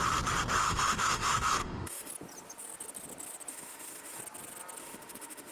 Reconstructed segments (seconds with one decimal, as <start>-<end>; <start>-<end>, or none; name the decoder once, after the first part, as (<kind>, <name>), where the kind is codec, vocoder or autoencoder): 0.6-2.1 (autoencoder, DAC-VAE); 3.5-4.2; 4.8-5.5